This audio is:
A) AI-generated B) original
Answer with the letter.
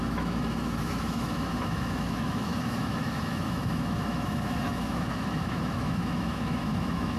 A